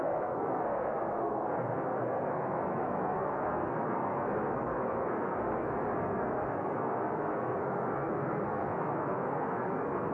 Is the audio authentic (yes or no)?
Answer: no